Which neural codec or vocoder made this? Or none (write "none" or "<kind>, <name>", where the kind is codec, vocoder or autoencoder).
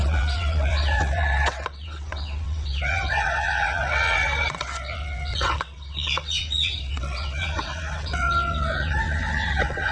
vocoder, WaveNeXt